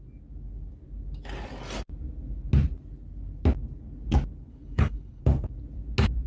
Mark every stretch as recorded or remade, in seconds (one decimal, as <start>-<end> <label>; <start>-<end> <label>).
0.0-4.5 recorded; 4.5-5.2 remade; 5.2-6.3 recorded